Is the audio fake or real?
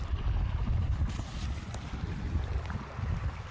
real